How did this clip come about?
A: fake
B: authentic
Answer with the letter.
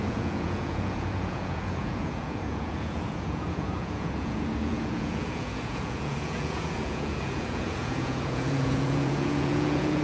A